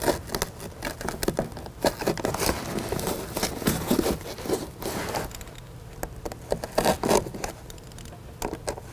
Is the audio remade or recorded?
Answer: recorded